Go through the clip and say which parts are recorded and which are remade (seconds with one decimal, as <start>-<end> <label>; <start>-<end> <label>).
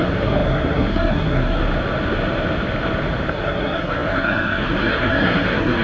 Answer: 0.0-1.6 remade; 1.6-3.3 recorded; 3.3-5.8 remade